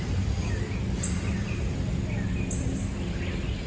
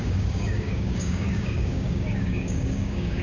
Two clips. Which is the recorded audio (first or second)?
first